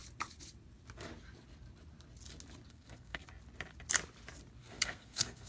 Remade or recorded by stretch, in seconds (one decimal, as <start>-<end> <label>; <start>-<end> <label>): 0.0-2.7 recorded; 2.7-3.2 remade; 3.2-4.6 recorded; 4.6-5.5 remade